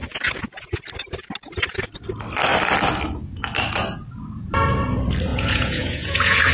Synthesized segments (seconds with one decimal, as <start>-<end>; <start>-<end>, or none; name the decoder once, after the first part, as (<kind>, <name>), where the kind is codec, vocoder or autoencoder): 5.3-6.5 (vocoder, Vocos)